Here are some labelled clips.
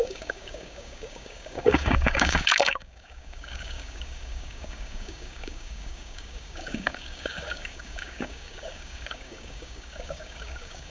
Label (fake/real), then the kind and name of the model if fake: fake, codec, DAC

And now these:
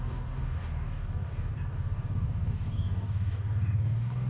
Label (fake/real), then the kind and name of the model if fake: fake, codec, DAC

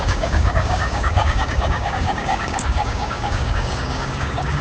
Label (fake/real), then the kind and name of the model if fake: fake, codec, DAC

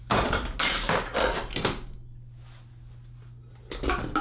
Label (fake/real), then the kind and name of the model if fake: real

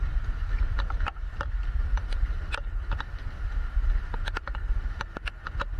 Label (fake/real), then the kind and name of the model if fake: real